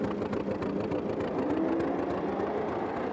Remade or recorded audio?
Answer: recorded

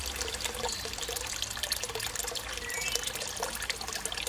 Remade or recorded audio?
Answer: recorded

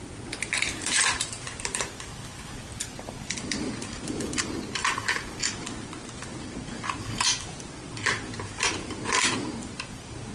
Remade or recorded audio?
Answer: remade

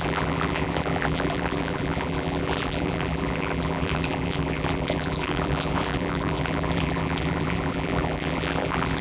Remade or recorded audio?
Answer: remade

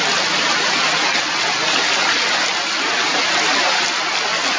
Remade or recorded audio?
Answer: recorded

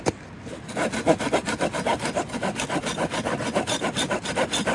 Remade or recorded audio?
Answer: recorded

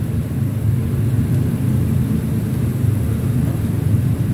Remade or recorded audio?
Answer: recorded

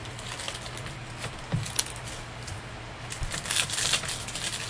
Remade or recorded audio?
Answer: recorded